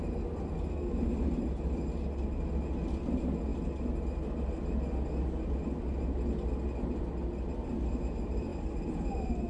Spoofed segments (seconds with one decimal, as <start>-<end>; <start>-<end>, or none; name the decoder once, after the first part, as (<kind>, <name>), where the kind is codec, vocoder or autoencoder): none